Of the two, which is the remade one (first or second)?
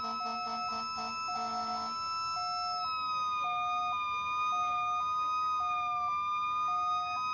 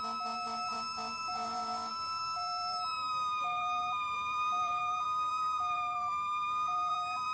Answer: second